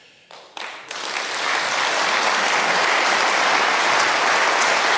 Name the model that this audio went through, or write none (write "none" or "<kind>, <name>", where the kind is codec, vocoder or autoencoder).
none